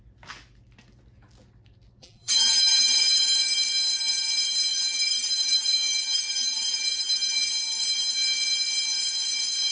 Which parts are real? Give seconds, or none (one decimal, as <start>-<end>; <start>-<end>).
0.0-2.0; 3.2-4.7; 7.5-9.7